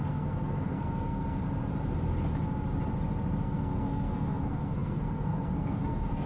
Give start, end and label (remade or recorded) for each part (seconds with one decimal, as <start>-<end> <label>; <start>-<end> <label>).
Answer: 0.0-1.4 remade; 1.4-3.4 recorded; 3.4-6.3 remade

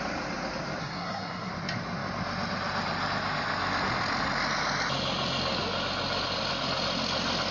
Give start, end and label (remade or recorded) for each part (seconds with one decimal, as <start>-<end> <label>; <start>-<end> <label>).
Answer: 0.0-0.8 recorded; 0.8-1.5 remade; 1.5-7.5 recorded